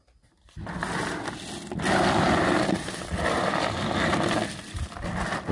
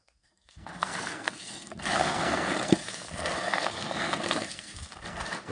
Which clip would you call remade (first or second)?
second